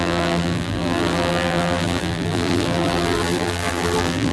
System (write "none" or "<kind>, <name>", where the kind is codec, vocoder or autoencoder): vocoder, BigVGAN v2